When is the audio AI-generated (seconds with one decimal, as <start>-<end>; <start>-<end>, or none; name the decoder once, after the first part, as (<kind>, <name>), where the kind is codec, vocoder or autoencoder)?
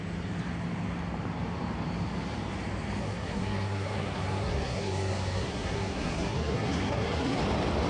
3.0-7.4 (codec, SNAC)